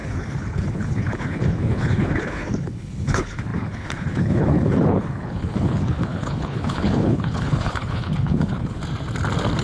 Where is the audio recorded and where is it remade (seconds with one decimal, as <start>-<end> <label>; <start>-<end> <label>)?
0.0-8.8 remade; 8.8-9.6 recorded